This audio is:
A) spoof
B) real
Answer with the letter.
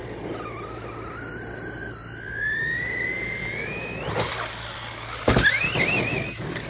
B